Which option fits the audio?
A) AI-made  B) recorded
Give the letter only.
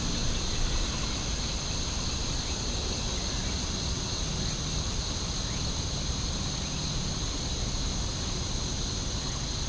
B